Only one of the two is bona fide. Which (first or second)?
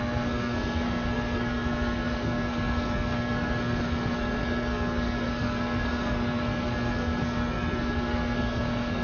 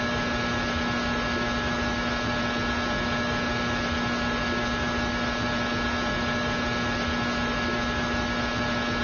second